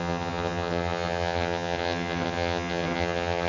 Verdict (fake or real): fake